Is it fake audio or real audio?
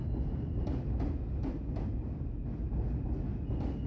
real